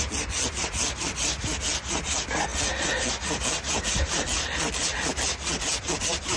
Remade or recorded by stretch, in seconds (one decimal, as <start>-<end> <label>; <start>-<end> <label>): 0.0-6.4 recorded